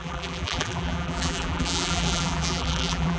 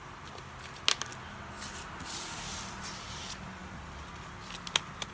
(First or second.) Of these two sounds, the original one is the second